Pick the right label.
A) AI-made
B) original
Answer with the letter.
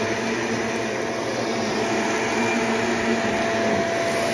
B